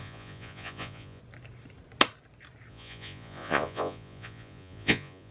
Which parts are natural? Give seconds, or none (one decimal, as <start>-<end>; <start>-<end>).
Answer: 1.2-2.7